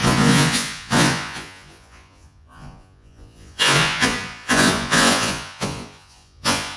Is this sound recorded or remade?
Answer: remade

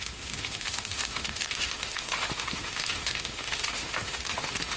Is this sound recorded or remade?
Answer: remade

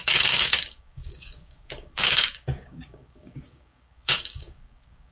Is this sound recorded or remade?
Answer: remade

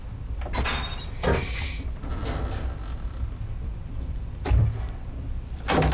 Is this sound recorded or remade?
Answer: recorded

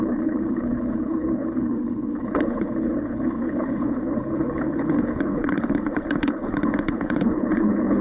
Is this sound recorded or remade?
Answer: remade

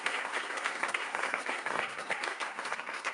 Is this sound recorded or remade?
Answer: remade